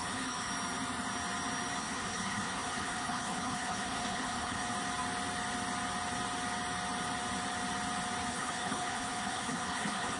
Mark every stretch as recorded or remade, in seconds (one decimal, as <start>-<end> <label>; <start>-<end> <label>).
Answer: 0.0-0.5 remade; 0.5-1.8 recorded; 1.8-4.6 remade; 4.6-8.3 recorded; 8.3-10.2 remade